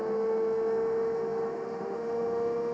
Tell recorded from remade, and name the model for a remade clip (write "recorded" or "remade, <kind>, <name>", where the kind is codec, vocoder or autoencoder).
remade, autoencoder, DAC-VAE